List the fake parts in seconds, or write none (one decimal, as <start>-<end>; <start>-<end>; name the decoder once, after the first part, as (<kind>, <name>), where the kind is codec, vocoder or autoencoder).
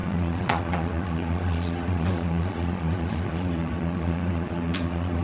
0.0-5.2 (vocoder, Vocos)